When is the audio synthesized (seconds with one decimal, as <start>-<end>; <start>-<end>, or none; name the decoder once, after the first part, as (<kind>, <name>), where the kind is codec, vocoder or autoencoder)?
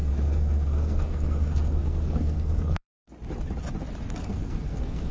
0.0-3.1 (codec, SNAC); 4.2-5.1